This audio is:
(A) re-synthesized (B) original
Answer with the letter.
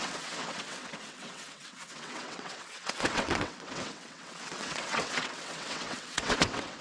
A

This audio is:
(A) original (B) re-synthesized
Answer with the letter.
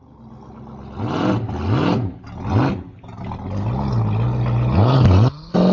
A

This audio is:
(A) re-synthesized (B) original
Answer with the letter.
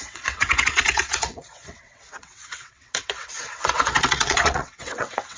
A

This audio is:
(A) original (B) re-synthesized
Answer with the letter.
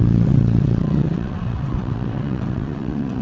B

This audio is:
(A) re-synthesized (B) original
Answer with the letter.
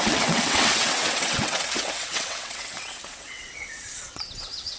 A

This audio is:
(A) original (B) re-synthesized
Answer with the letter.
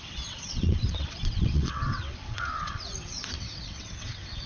B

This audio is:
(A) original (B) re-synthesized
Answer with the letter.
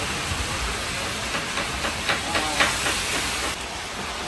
A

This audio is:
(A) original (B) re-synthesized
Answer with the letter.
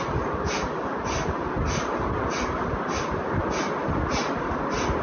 A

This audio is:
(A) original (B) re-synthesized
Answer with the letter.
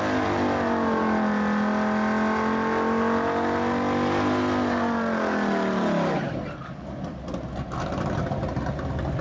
A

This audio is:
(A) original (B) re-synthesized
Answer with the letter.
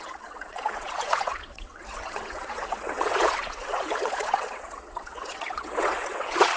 B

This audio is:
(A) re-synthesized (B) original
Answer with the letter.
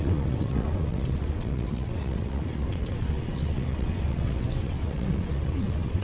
A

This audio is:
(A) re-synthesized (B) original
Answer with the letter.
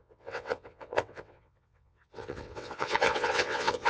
A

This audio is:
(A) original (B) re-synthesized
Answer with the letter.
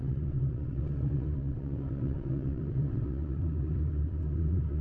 B